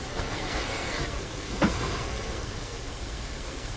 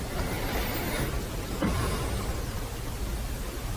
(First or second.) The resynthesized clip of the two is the first